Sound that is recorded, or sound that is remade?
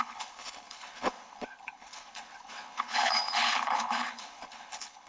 remade